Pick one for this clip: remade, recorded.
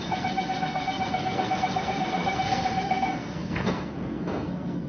remade